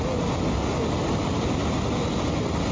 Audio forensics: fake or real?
real